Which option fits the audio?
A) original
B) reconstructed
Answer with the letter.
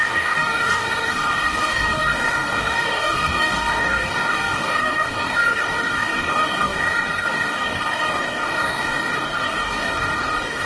B